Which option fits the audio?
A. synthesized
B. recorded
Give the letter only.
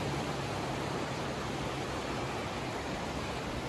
B